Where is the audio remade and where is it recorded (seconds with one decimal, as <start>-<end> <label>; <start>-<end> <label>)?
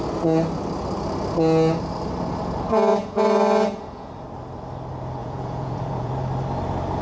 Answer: 0.0-2.9 recorded; 2.9-4.1 remade; 4.1-5.2 recorded; 5.2-6.1 remade; 6.1-7.0 recorded